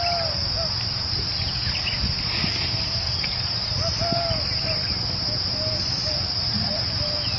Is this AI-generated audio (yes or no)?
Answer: no